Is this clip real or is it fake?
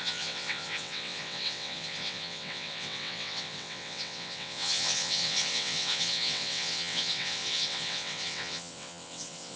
fake